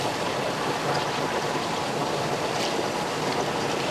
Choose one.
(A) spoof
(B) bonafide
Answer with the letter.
A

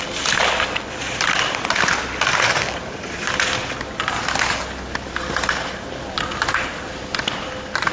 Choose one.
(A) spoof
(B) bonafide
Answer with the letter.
B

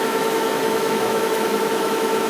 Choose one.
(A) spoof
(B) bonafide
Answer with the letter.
A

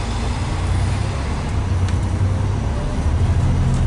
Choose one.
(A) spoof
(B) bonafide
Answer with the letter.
B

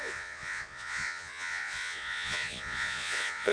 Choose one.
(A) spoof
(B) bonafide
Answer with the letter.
A